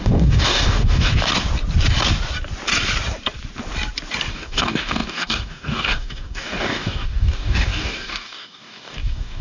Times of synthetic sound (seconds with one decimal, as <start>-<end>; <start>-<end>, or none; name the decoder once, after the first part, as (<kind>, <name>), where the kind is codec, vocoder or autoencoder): 0.0-1.1 (codec, DAC); 4.3-9.4